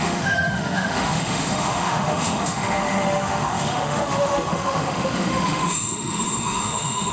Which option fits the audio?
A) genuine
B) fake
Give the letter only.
B